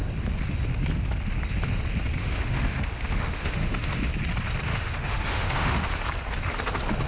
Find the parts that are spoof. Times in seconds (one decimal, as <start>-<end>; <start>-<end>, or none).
2.2-4.1; 4.7-5.9